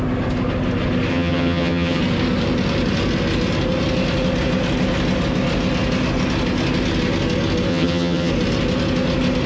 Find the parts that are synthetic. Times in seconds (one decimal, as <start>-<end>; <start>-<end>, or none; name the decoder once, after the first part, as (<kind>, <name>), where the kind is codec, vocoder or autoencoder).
1.1-2.0 (vocoder, HiFi-GAN); 7.7-8.3